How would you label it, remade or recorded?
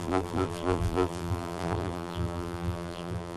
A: remade